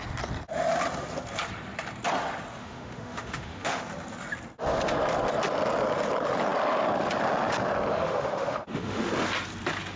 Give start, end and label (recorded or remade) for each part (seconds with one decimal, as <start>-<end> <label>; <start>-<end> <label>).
0.0-2.6 recorded; 2.6-3.8 remade; 3.8-7.9 recorded; 7.9-9.1 remade; 9.1-10.0 recorded